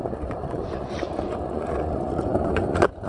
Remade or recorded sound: remade